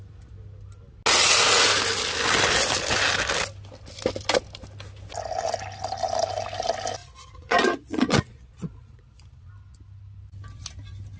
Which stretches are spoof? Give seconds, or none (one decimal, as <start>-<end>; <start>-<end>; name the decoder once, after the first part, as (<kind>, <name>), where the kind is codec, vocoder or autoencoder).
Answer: 7.0-9.5 (vocoder, Vocos)